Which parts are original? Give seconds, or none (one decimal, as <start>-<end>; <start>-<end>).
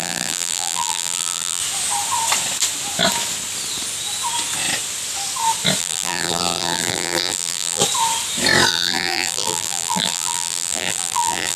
1.6-5.8; 7.8-8.7